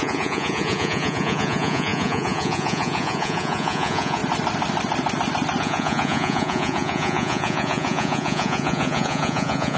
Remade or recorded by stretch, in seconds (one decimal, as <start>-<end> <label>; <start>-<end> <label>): 0.0-4.2 remade; 4.2-5.6 recorded; 5.6-9.8 remade